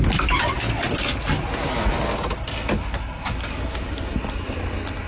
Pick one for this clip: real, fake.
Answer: real